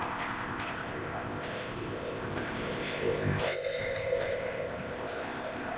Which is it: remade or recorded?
remade